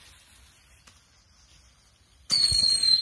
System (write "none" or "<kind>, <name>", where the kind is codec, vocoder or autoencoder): none